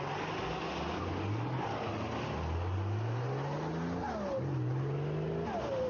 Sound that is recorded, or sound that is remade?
recorded